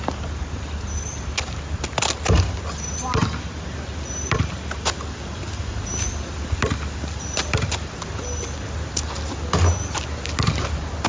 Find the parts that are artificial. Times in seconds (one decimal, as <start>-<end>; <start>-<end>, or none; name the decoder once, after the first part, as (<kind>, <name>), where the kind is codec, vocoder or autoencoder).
none